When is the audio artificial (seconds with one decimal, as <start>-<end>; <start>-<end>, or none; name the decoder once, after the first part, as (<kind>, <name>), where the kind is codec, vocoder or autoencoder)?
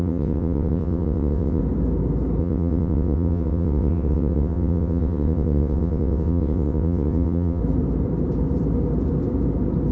0.0-1.6 (vocoder, WaveNeXt); 2.4-7.6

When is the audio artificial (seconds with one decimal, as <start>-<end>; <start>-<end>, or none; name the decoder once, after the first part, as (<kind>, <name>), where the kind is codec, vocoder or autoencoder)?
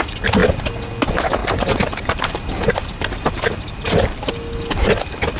1.4-4.3 (vocoder, BigVGAN v2)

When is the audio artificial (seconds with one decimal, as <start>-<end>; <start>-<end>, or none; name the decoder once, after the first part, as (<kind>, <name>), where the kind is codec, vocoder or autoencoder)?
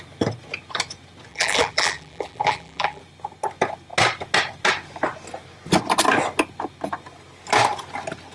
1.3-3.0 (vocoder, BigVGAN v2)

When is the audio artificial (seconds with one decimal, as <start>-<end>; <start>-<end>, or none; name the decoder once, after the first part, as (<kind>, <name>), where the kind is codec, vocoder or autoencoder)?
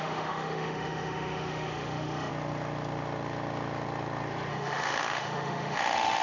0.0-2.3 (autoencoder, DAC-VAE); 4.5-6.2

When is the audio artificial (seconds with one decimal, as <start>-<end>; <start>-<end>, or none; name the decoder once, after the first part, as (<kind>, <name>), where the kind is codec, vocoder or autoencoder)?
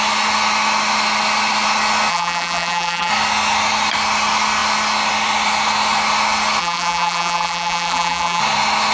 2.1-3.1 (vocoder, BigVGAN v2); 6.6-8.4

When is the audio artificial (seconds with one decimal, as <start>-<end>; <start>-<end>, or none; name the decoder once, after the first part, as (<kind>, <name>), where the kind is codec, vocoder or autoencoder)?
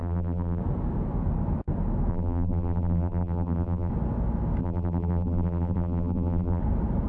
0.0-0.6 (vocoder, BigVGAN v2); 2.1-3.9; 4.6-6.6